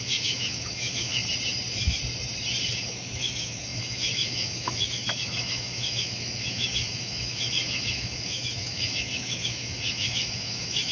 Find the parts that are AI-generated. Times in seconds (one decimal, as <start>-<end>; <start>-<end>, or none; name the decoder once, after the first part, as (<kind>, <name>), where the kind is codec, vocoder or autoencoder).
0.0-1.2 (autoencoder, DAC-VAE); 2.7-10.9